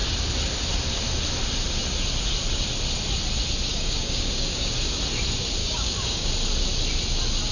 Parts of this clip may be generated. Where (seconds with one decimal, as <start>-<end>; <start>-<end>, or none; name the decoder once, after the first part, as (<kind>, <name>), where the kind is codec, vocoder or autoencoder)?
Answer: 3.7-4.7 (codec, DAC); 5.6-6.3